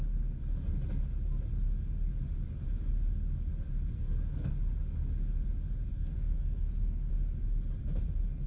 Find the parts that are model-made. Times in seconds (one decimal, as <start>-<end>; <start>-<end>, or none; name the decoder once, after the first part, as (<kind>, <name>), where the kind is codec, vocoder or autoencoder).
3.9-4.5 (codec, SNAC); 5.9-7.1